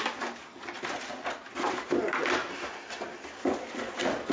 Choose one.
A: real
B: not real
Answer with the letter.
A